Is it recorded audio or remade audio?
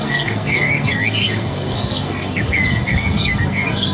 remade